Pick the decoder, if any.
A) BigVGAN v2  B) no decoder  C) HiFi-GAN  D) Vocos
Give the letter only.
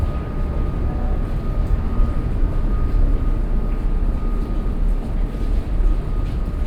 B